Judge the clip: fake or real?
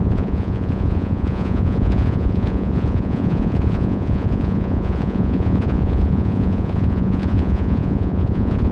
fake